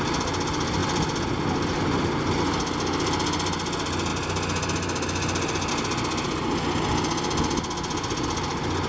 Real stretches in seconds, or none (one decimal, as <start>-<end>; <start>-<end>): 0.0-8.9